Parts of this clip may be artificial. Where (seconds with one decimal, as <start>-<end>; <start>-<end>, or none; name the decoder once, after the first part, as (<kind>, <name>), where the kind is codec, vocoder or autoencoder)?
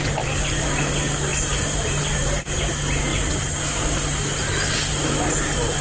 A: 1.3-2.7 (vocoder, BigVGAN v2)